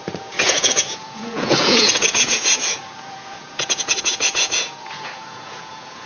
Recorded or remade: remade